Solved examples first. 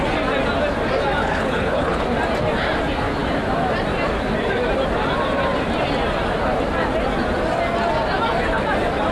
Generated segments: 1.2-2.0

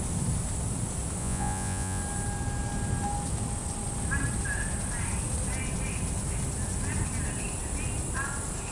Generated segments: 1.2-2.0

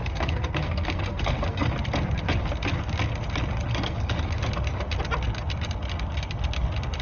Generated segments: 0.0-1.7; 3.7-4.3

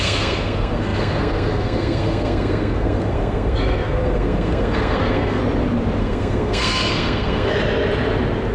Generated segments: 0.0-5.4; 6.0-7.5

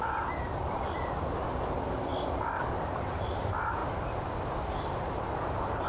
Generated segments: 0.0-2.1; 3.1-5.9

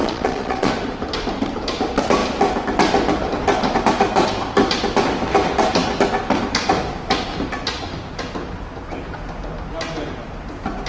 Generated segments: 0.0-0.7